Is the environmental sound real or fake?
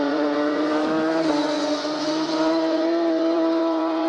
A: fake